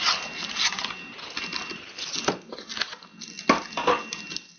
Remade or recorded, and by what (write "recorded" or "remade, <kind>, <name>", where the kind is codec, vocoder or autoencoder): recorded